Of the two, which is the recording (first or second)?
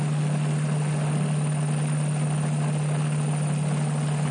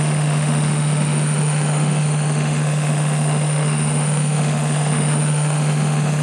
first